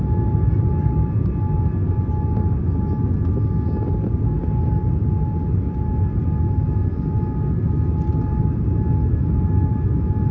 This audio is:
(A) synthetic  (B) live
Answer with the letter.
B